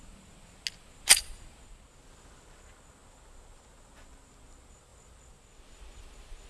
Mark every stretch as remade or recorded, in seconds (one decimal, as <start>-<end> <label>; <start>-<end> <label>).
0.0-6.5 recorded